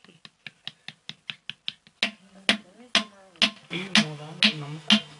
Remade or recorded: recorded